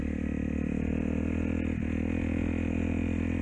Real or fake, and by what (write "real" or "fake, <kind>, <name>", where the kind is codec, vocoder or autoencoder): real